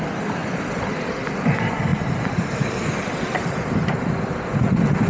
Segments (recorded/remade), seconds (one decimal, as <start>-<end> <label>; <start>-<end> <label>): 0.0-5.1 recorded

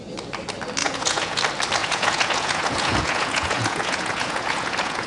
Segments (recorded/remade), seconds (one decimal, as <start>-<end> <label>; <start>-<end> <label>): 0.0-0.8 recorded; 0.8-1.4 remade; 1.4-1.8 recorded; 1.8-5.1 remade

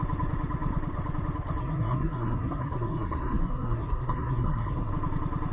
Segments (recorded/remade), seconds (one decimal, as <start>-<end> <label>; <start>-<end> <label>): 0.0-1.6 recorded; 1.6-4.9 remade; 4.9-5.5 recorded

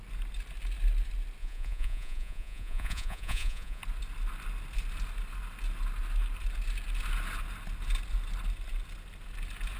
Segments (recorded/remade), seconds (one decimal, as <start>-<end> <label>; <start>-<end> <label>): 0.0-1.4 recorded; 1.4-3.8 remade; 3.8-9.8 recorded